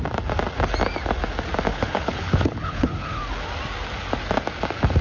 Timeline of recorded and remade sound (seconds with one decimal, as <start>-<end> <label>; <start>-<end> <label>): 0.0-1.7 recorded; 1.7-3.2 remade; 3.2-5.0 recorded